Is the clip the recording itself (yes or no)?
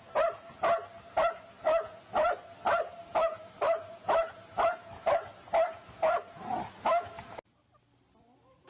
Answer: yes